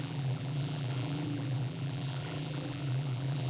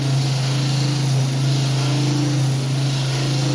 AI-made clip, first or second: first